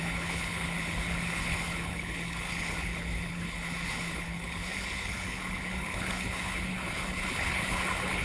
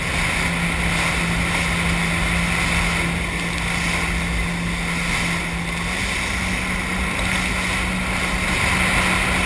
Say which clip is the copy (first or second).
first